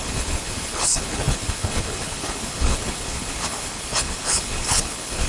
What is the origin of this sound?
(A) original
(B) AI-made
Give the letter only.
B